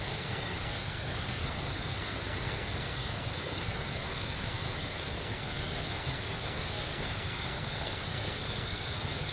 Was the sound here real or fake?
fake